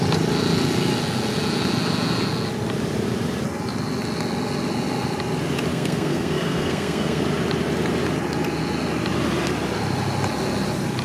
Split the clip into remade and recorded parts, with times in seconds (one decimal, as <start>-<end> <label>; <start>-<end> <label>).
0.0-5.7 recorded; 5.7-7.2 remade; 7.2-11.0 recorded